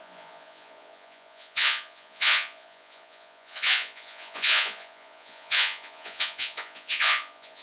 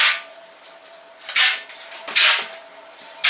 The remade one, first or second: first